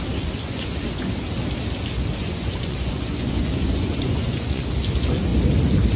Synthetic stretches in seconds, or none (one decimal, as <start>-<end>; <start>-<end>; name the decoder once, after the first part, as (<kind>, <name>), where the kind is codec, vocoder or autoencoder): 0.4-1.1 (vocoder, Vocos); 2.2-4.6